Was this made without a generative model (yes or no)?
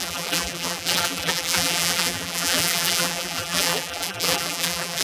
no